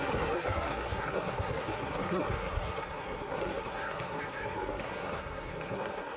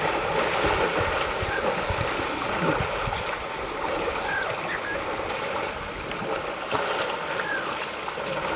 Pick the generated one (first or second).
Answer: first